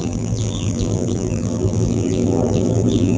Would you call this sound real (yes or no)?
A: no